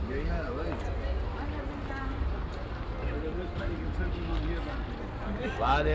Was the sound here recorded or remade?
recorded